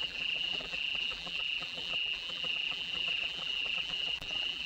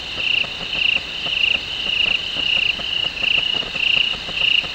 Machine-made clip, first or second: first